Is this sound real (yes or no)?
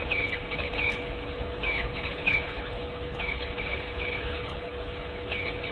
no